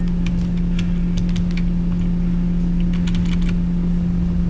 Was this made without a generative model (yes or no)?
yes